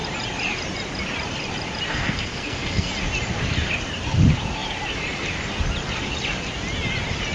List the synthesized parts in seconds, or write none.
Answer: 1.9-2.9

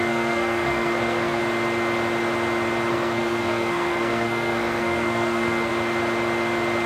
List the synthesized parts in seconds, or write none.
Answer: 0.0-1.4; 2.9-5.7

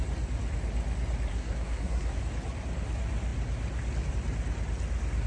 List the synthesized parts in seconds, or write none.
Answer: 1.3-2.2

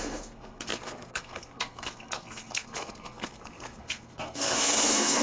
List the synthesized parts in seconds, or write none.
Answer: 0.0-5.2

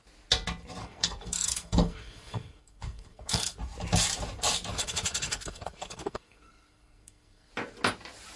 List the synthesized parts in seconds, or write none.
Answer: 0.8-3.6; 4.7-7.5

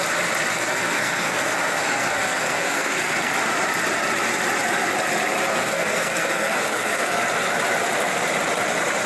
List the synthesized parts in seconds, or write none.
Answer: 0.5-3.3; 5.5-7.2